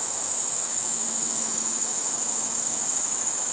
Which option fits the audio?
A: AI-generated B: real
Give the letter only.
A